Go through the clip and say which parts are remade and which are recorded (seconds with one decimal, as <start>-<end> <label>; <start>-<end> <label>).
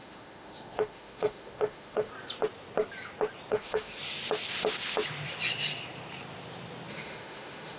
0.0-2.1 remade; 2.1-3.5 recorded; 3.5-4.0 remade; 4.0-6.9 recorded; 6.9-7.8 remade